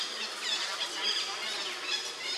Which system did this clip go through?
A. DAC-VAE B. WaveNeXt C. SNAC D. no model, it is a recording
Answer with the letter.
D